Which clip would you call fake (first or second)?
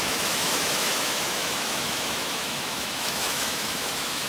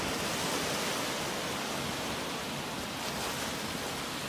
first